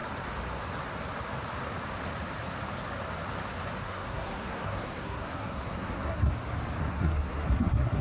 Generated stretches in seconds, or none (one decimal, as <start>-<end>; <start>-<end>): 3.8-6.3; 6.8-8.0